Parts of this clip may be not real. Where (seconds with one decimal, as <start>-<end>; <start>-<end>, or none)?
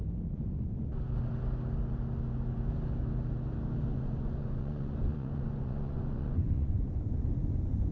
3.9-7.2